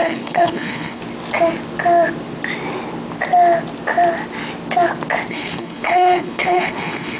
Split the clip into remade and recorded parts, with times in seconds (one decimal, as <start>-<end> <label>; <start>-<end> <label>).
0.0-1.0 remade; 1.0-5.3 recorded; 5.3-7.2 remade